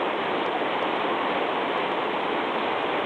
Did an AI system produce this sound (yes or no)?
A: no